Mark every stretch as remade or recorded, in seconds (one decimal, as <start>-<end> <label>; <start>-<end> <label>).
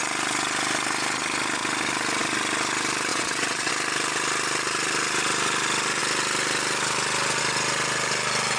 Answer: 0.0-3.1 recorded; 3.1-3.7 remade; 3.7-8.6 recorded